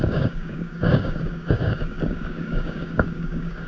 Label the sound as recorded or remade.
remade